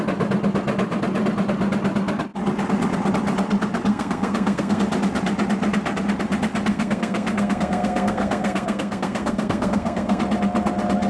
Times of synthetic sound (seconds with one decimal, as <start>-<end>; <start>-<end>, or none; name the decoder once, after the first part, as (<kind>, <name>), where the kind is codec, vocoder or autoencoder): 3.9-4.8 (codec, SNAC); 6.7-10.2